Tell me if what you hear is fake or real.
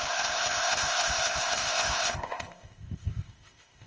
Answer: fake